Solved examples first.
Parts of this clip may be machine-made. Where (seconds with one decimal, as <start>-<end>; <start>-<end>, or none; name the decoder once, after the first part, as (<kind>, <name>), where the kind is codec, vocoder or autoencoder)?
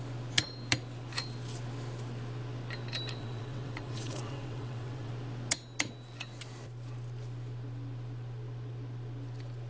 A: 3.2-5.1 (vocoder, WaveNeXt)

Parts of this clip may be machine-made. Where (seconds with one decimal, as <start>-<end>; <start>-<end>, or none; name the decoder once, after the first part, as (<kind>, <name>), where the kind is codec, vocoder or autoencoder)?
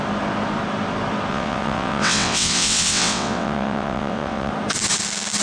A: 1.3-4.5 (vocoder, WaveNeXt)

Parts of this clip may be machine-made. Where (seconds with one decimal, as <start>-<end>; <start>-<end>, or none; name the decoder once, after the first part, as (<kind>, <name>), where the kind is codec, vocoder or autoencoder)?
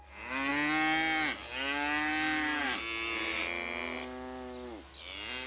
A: none